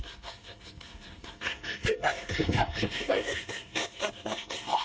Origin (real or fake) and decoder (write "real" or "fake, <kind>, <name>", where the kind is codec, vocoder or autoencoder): fake, codec, SNAC